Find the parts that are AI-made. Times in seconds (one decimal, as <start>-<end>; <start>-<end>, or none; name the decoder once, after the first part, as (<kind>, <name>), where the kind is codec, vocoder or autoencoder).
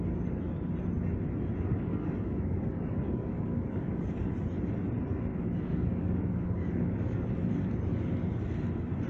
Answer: 1.9-4.3 (codec, DAC); 5.3-7.3